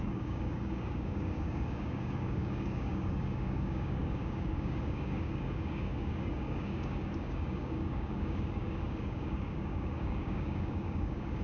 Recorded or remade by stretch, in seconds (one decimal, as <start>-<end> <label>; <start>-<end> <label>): 0.0-11.4 remade